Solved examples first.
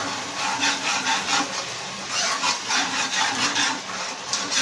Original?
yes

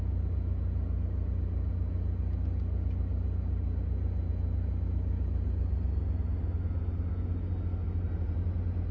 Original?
yes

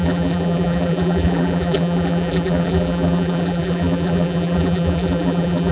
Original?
no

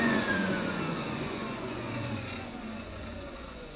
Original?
no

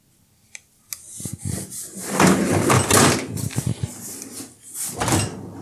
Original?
yes